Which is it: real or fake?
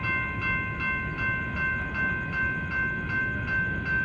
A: real